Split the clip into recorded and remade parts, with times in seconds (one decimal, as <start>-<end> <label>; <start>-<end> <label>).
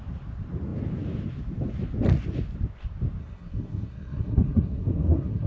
0.0-3.2 recorded; 3.2-5.5 remade